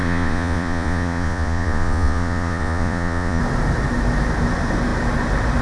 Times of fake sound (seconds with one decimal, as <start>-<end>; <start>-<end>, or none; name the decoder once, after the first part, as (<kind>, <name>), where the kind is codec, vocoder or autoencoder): 0.0-3.4 (vocoder, Vocos)

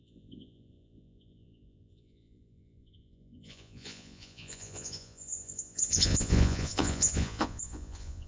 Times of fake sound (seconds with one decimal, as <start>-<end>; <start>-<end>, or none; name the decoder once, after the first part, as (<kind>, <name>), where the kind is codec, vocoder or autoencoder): 0.0-8.3 (vocoder, Vocos)